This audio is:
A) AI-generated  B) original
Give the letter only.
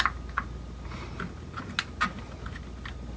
B